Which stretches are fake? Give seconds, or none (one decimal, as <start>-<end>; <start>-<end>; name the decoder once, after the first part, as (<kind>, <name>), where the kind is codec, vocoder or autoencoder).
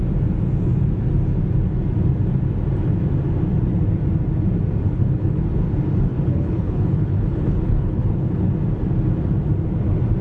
4.8-5.4 (codec, HILCodec); 6.1-8.5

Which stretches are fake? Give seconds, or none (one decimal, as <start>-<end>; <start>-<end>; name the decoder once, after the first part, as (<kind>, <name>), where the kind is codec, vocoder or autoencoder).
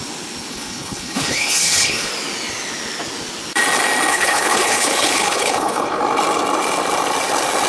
0.5-2.1 (codec, HILCodec); 4.1-6.0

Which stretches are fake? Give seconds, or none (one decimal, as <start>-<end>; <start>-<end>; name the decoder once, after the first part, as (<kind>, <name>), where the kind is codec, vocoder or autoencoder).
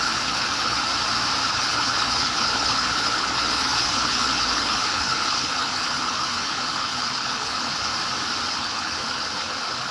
0.0-0.9 (codec, HILCodec); 1.5-7.9; 8.5-9.9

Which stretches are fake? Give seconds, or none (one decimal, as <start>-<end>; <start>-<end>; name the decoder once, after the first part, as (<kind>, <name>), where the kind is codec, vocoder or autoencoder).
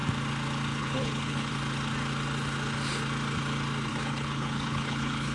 0.8-1.5 (codec, HILCodec); 3.9-5.3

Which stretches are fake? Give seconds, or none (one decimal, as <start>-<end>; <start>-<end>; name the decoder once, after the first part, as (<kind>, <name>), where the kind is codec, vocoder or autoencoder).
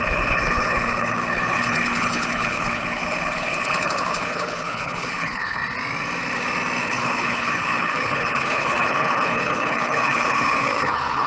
0.0-5.6 (codec, HILCodec); 6.8-11.3